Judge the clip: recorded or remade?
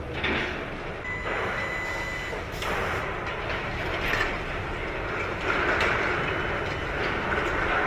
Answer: recorded